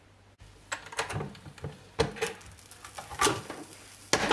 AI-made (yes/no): no